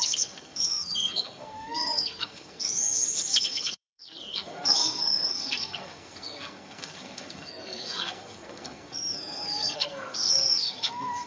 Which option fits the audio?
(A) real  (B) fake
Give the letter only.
B